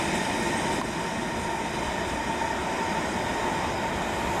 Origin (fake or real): real